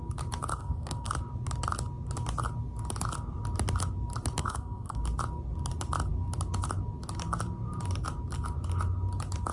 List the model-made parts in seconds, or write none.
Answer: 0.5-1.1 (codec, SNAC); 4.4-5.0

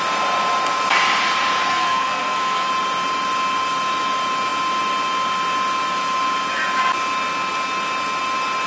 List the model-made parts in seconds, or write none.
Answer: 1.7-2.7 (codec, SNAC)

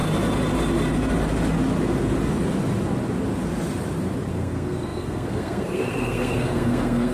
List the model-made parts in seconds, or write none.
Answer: 4.3-7.1 (codec, SNAC)

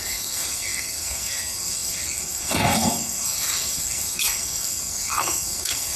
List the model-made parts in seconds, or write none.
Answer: 0.0-6.0 (codec, SNAC)